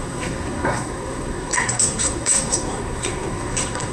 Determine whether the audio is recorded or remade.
remade